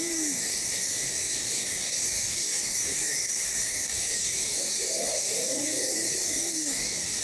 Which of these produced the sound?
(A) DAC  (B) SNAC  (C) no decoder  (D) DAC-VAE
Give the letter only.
A